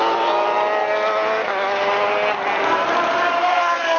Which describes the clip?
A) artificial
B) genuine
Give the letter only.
B